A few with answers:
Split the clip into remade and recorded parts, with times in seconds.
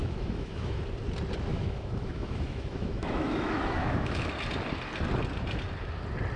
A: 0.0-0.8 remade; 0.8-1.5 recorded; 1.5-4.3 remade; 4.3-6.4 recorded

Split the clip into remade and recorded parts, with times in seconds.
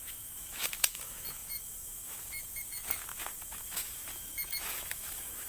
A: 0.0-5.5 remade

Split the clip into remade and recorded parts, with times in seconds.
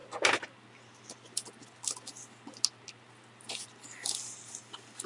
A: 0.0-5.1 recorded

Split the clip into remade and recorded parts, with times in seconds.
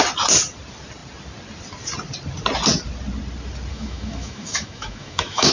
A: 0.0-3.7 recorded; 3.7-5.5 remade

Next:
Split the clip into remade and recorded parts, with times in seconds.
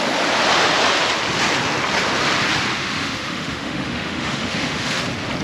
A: 0.0-2.7 recorded; 2.7-5.0 remade; 5.0-5.4 recorded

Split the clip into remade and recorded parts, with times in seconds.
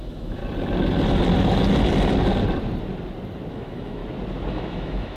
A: 0.0-0.4 remade; 0.4-3.5 recorded; 3.5-4.0 remade; 4.0-4.5 recorded; 4.5-5.2 remade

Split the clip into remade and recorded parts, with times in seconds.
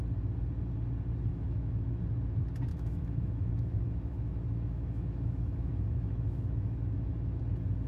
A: 0.0-1.3 recorded; 1.3-2.0 remade; 2.0-2.7 recorded; 2.7-7.4 remade; 7.4-7.9 recorded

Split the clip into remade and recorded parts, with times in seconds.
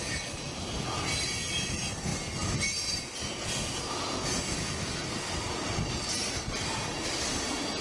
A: 0.0-7.8 recorded